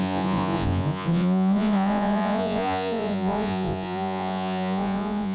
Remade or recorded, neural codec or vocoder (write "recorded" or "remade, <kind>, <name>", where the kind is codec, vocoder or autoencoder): remade, vocoder, Vocos